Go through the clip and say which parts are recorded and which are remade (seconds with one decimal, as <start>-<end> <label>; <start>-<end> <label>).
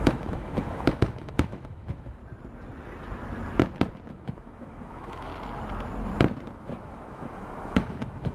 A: 0.0-2.2 remade; 2.2-4.1 recorded; 4.1-5.3 remade; 5.3-6.5 recorded; 6.5-8.3 remade